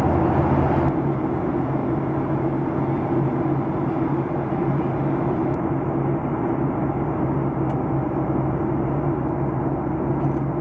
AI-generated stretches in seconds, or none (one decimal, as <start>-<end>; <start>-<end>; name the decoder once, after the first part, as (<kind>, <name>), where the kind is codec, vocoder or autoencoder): none